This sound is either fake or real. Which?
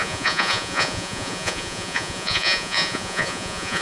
fake